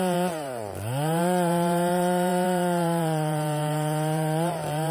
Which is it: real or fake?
fake